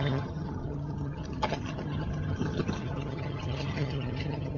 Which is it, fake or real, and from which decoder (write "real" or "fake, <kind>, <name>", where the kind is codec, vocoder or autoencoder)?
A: fake, vocoder, HiFi-GAN